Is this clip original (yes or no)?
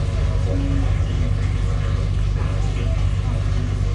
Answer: yes